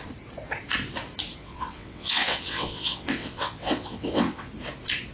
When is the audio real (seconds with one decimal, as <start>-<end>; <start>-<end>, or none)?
0.0-1.4; 4.5-5.1